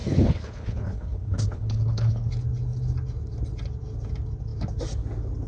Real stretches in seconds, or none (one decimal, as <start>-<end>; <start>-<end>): 2.3-5.5